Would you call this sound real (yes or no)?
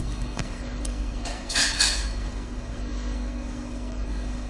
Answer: no